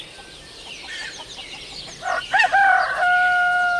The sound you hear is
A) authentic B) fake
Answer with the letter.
A